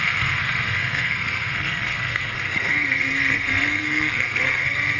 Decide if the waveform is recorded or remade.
remade